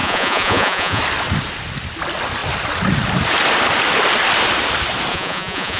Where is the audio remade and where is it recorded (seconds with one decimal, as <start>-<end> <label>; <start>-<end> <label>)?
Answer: 0.0-1.0 remade; 1.0-5.1 recorded; 5.1-5.8 remade